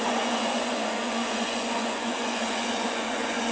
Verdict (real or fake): fake